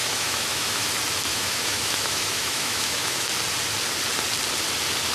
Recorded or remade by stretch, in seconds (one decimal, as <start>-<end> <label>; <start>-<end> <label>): 0.0-0.9 remade; 0.9-1.3 recorded; 1.3-3.3 remade; 3.3-5.1 recorded

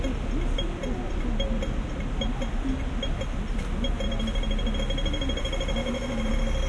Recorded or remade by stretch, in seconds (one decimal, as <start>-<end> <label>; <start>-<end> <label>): 0.0-5.8 recorded; 5.8-6.3 remade; 6.3-6.7 recorded

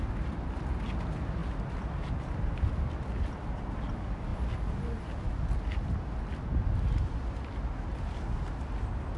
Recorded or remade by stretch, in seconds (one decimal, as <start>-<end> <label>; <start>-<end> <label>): 0.0-9.2 recorded

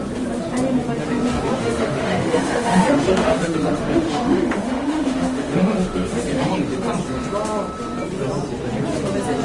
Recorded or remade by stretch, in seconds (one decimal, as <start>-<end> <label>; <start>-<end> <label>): 0.0-1.6 recorded; 1.6-6.5 remade; 6.5-9.4 recorded

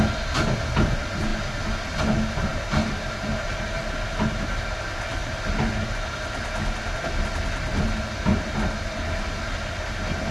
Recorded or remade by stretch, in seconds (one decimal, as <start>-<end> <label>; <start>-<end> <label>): 0.0-10.3 recorded

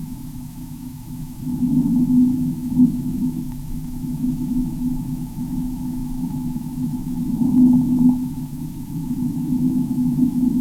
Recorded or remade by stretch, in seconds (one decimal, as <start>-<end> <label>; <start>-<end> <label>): 0.0-10.6 remade